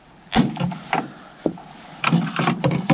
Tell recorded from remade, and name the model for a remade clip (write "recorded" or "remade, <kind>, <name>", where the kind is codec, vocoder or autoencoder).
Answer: recorded